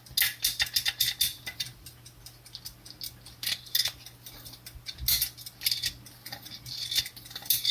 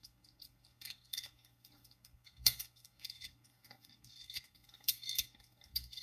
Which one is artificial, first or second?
second